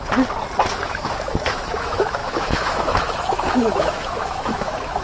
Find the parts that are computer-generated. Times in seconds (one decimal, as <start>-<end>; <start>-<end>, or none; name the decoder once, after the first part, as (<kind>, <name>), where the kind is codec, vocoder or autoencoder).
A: 0.7-5.0 (autoencoder, DAC-VAE)